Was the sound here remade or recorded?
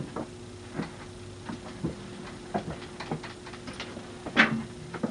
recorded